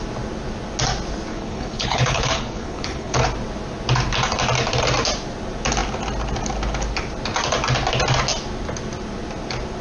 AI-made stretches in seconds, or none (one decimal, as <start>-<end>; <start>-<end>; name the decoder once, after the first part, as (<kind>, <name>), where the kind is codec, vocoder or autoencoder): 1.3-3.2 (codec, HILCodec)